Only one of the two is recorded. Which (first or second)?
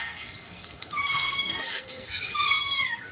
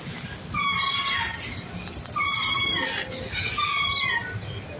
second